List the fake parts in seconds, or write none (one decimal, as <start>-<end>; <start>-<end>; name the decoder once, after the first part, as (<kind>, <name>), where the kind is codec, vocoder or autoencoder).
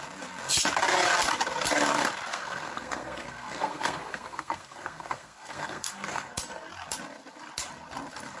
2.3-6.4 (codec, SNAC)